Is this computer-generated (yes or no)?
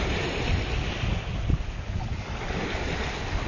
no